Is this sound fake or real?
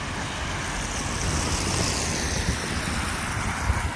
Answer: real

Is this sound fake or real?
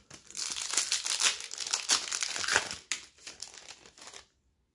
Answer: real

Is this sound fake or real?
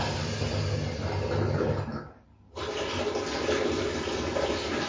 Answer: real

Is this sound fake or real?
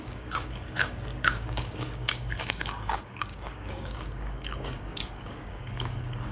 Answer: fake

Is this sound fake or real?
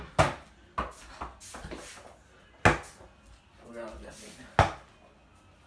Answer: real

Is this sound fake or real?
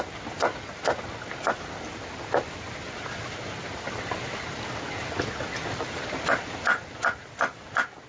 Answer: real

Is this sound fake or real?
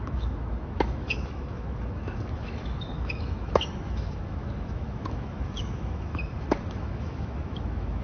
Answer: fake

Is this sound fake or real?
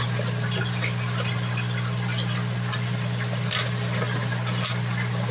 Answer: real